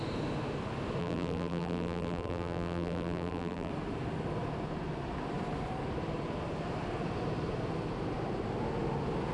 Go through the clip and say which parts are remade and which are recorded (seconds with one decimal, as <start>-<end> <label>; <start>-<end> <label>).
0.0-1.0 recorded; 1.0-3.7 remade; 3.7-9.3 recorded